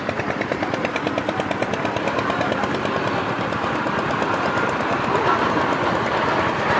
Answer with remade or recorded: recorded